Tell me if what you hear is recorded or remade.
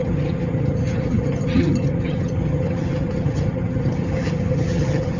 remade